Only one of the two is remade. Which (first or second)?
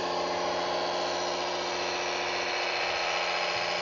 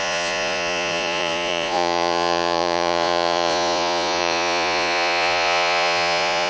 second